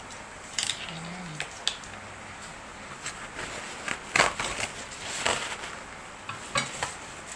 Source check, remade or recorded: recorded